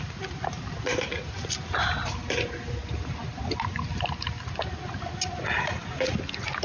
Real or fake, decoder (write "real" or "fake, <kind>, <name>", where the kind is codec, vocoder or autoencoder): real